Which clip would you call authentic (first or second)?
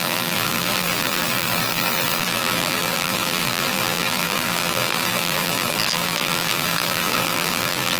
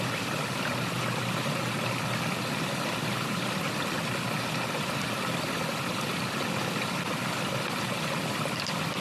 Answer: second